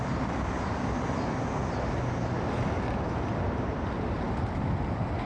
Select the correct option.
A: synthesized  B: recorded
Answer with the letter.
B